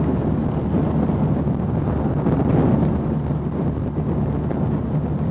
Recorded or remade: recorded